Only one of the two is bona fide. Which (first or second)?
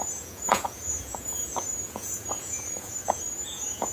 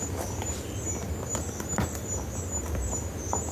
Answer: second